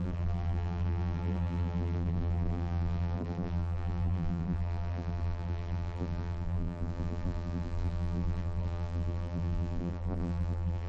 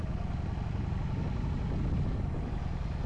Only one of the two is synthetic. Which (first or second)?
first